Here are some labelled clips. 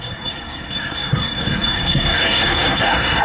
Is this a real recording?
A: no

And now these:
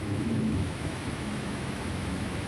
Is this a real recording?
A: no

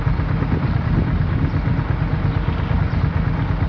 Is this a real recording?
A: yes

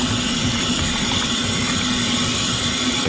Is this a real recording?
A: yes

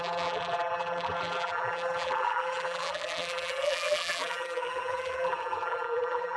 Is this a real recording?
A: no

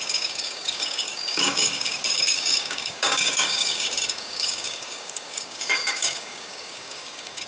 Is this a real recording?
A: no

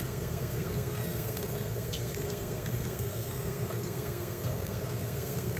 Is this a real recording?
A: no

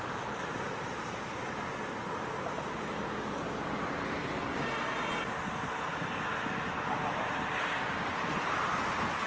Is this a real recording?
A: yes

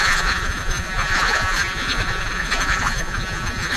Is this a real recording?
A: no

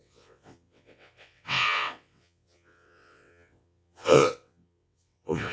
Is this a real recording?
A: no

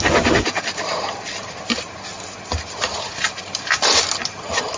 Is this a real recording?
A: yes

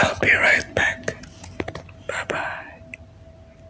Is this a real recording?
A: yes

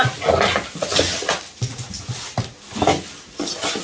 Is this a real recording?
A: yes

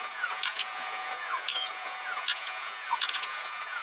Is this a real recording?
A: no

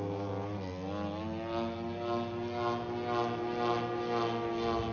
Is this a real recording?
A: yes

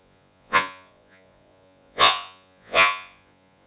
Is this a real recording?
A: no